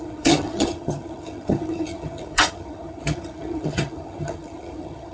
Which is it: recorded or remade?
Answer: remade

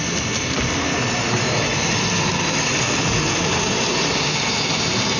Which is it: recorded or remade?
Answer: recorded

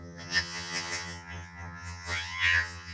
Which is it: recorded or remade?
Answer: remade